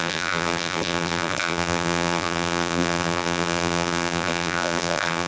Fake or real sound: fake